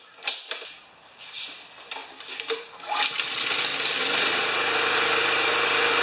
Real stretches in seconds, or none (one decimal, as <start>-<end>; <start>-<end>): 0.0-6.0